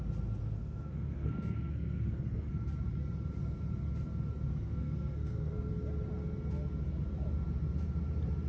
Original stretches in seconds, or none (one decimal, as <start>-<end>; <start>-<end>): 0.0-0.4; 2.5-4.5; 5.7-8.5